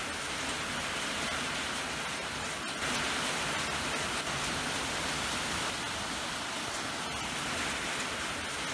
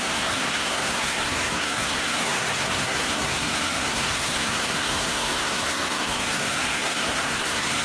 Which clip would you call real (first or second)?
first